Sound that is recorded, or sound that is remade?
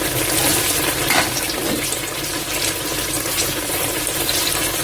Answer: remade